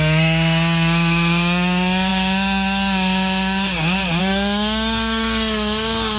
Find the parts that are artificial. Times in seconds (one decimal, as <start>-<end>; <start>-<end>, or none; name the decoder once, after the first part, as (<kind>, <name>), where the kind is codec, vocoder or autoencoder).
0.0-6.2 (codec, DAC)